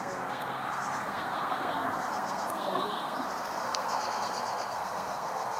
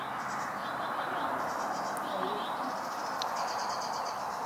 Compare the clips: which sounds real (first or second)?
second